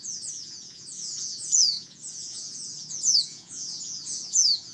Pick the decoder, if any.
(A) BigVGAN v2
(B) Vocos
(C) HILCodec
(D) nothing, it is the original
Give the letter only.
B